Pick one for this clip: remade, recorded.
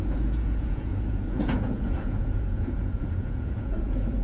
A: remade